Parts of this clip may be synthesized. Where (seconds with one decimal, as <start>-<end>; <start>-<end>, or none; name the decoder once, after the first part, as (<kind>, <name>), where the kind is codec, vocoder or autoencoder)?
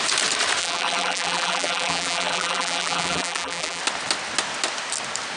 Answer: 0.6-3.8 (vocoder, BigVGAN v2)